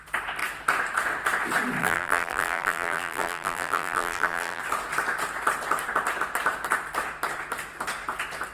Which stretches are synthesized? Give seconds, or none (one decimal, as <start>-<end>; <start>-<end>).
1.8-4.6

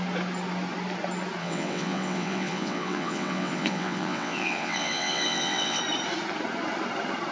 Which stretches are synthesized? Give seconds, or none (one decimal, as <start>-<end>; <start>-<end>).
1.4-5.8

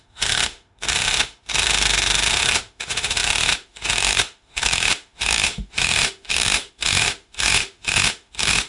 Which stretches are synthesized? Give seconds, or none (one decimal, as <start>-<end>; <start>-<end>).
0.0-8.7

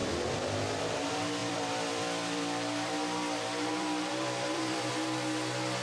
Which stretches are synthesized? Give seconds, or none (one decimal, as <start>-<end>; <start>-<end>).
0.0-0.8; 1.4-4.9

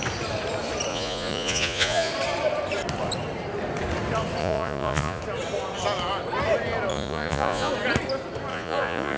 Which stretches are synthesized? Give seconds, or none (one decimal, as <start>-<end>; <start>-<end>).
0.9-2.1; 4.4-5.2; 6.9-7.7; 8.5-9.2